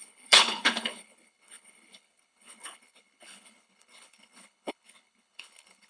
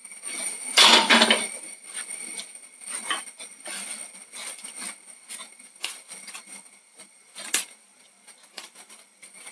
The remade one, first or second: first